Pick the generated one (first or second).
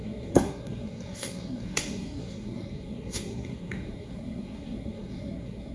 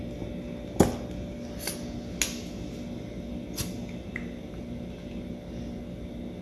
first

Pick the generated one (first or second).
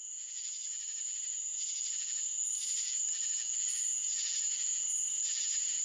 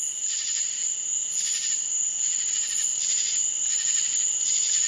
first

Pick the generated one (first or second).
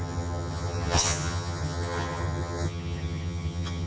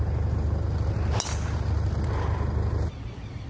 first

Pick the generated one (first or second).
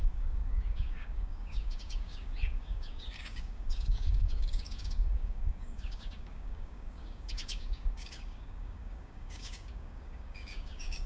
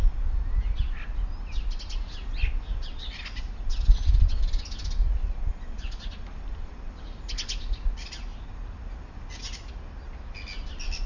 first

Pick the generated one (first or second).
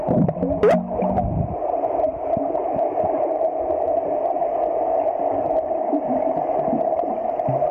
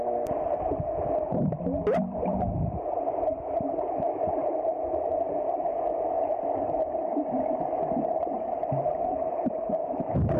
second